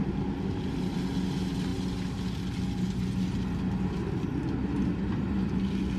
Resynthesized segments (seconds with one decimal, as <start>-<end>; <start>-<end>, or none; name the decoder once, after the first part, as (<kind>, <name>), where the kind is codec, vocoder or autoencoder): 4.9-5.5 (vocoder, BigVGAN v2)